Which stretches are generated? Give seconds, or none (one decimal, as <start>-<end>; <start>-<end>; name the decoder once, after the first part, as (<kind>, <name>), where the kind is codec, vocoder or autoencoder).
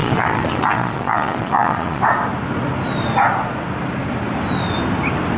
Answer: 0.0-2.0 (vocoder, Vocos)